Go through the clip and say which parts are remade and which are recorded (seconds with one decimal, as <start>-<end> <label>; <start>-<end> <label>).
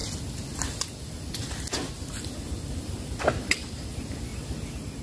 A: 0.0-5.0 recorded